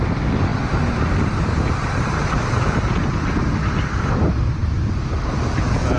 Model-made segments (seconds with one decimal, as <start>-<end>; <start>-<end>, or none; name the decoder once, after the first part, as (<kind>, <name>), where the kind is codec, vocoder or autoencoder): none